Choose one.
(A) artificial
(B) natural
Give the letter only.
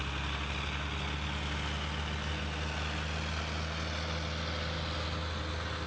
B